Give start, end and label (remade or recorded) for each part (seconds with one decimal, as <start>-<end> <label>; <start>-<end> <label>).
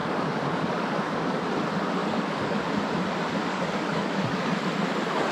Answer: 0.0-1.4 remade; 1.4-2.0 recorded; 2.0-2.6 remade; 2.6-3.5 recorded; 3.5-4.6 remade; 4.6-5.3 recorded